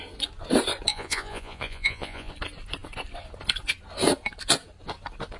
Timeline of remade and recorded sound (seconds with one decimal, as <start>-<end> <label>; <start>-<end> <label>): 0.0-0.9 recorded; 0.9-2.3 remade; 2.3-5.4 recorded